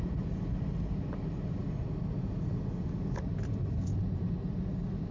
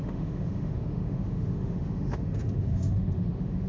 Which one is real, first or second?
first